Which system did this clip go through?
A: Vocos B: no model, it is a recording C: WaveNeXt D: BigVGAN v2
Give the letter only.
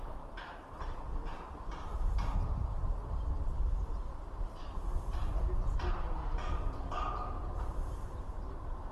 D